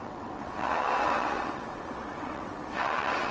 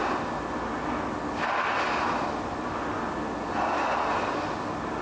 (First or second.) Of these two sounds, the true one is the second